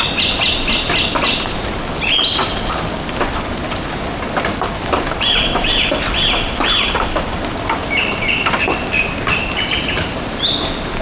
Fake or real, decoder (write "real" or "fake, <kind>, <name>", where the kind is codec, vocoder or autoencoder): real